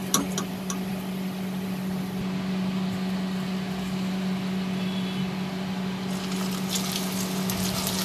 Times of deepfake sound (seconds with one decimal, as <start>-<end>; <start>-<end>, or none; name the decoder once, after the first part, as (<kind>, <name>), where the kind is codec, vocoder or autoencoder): none